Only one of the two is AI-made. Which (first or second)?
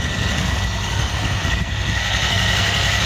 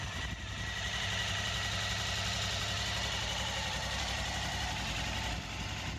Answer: first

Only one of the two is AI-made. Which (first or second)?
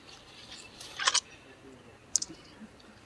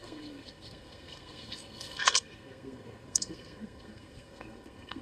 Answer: second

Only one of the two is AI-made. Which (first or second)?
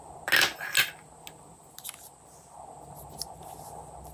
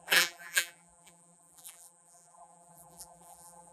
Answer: second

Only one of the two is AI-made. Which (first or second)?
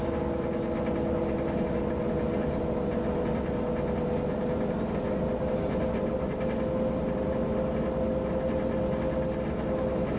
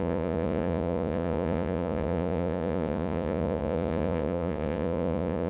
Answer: second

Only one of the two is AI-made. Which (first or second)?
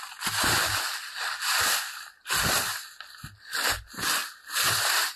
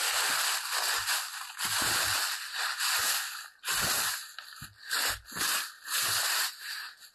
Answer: first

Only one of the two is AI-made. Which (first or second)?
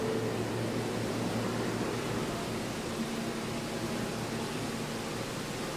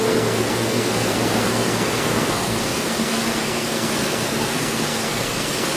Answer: second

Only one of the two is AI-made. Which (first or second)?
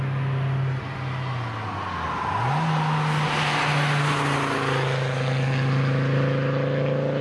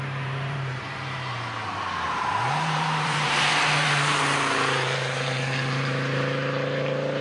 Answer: second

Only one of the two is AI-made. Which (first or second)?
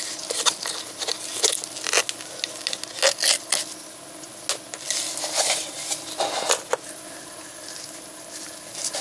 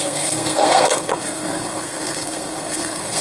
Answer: second